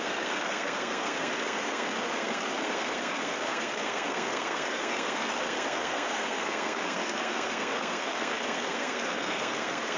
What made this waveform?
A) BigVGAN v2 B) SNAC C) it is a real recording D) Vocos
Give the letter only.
B